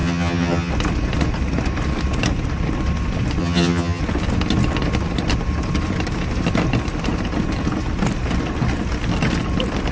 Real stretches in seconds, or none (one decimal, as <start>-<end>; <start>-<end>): 0.7-3.4; 4.0-9.9

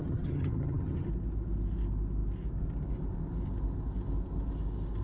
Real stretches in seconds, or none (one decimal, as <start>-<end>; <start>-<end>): 1.1-5.0

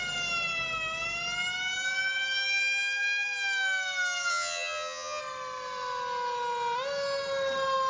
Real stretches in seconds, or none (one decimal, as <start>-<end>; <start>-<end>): 0.0-4.3; 5.2-7.9

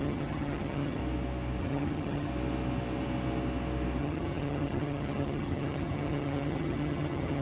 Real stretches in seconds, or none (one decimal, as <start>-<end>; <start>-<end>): 1.0-1.6; 2.3-4.0